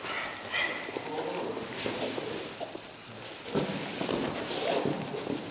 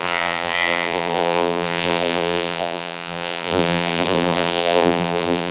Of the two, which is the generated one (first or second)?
second